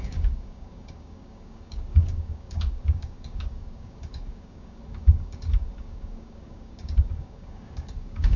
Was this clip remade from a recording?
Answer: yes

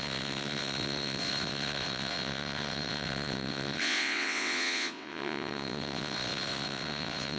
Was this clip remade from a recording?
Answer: yes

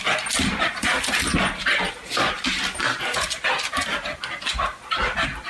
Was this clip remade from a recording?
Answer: no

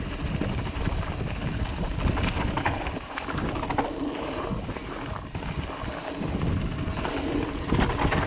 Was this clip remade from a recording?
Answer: no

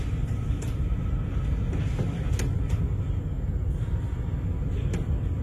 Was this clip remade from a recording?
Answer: no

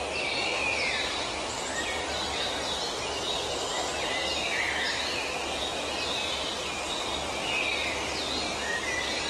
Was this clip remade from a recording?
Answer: no